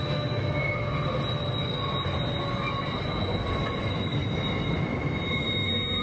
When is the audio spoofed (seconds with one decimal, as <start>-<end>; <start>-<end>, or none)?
0.0-0.6; 3.8-4.2; 5.3-6.0